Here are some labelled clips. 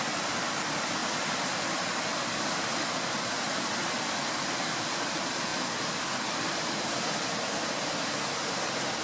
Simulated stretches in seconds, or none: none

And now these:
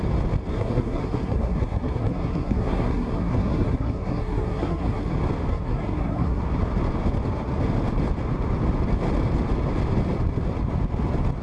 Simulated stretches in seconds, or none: 0.5-5.1 (codec, SNAC); 5.5-6.4

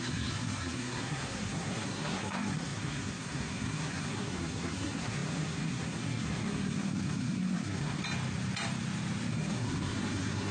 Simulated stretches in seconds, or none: 0.0-8.0 (codec, SNAC); 9.3-10.5

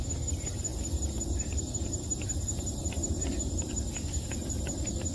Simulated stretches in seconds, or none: none

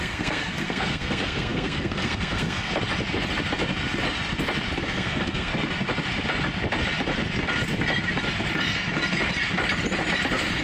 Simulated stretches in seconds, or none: 0.0-2.7 (codec, SNAC); 4.8-5.5

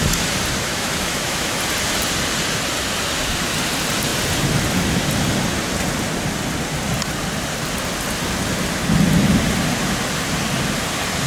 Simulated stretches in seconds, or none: 0.7-1.6 (autoencoder, DAC-VAE)

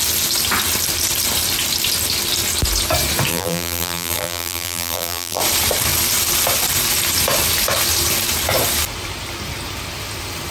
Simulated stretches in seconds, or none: 3.3-5.4 (vocoder, BigVGAN v2)

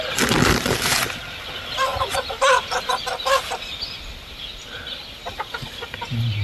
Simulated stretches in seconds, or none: none